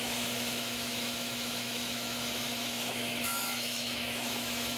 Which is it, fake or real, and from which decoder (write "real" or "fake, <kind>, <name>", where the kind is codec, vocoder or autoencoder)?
fake, autoencoder, DAC-VAE